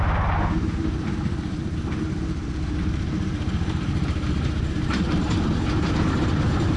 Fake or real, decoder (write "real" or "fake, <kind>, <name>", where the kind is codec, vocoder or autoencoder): fake, vocoder, BigVGAN v2